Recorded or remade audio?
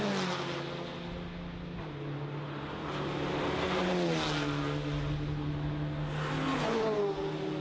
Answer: recorded